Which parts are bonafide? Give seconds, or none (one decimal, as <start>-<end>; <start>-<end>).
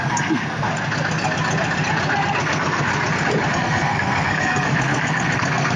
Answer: 0.7-2.4; 2.9-3.5